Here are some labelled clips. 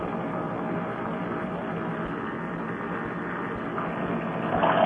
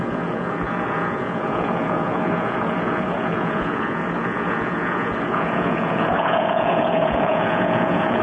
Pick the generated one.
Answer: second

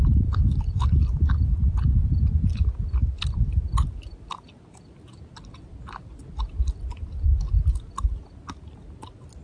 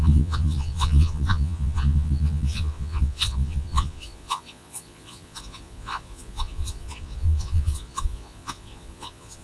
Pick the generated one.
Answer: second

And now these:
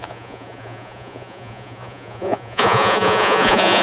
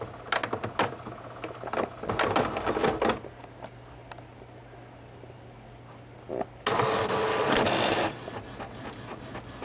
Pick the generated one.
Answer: first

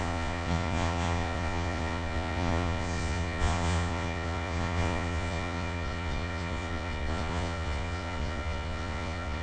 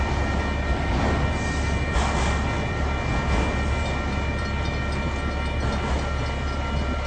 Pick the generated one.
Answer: first